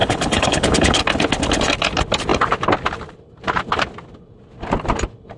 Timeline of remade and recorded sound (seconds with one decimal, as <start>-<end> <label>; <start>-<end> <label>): 0.0-1.0 remade; 1.0-5.4 recorded